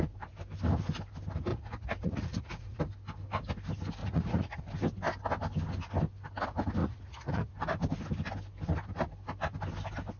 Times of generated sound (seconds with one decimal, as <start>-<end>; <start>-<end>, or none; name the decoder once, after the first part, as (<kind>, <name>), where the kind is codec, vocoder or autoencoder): 1.5-2.8 (vocoder, Vocos); 4.0-4.7; 6.8-7.5